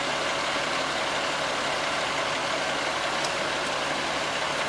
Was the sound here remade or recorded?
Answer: recorded